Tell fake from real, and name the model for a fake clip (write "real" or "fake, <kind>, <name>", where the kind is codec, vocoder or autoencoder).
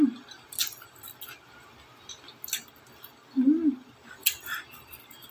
real